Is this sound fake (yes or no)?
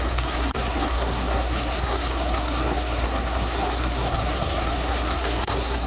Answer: yes